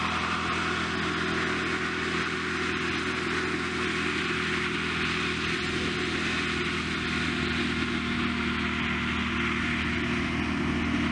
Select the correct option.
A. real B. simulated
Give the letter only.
A